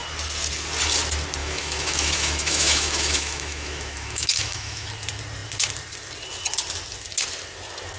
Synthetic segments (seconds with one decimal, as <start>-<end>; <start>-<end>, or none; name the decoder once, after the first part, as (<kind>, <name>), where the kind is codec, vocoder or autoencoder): 1.4-4.9 (autoencoder, DAC-VAE)